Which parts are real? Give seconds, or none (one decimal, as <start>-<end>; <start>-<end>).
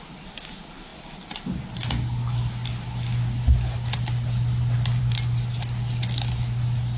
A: 0.0-7.0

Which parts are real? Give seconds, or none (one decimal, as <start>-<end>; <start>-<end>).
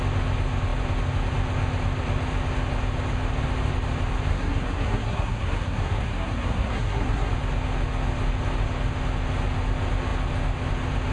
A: 0.0-4.3; 7.3-11.1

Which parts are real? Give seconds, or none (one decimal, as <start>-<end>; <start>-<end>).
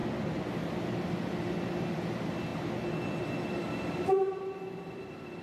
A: 0.0-5.4